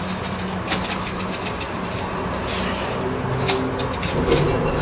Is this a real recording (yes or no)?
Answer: yes